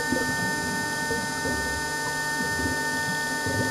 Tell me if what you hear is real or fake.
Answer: real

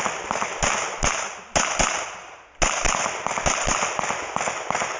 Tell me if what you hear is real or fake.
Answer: real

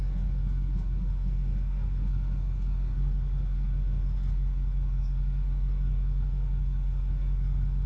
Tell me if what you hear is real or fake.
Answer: fake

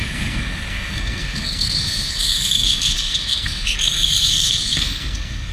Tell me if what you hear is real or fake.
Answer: fake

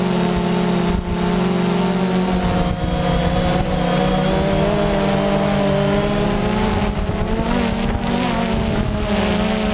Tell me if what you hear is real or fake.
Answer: real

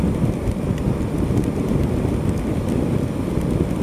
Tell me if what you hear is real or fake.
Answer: real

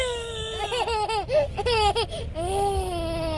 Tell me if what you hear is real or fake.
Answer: real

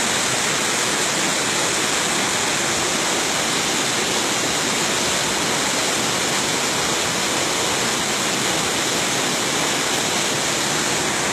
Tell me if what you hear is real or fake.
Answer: real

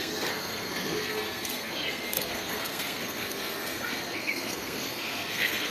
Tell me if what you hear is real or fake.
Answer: fake